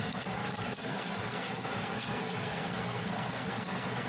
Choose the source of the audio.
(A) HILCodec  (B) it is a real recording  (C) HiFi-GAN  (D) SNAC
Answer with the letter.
D